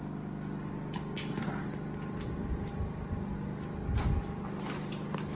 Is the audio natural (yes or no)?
yes